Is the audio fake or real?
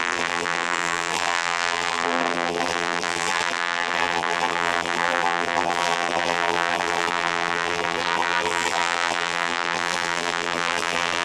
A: fake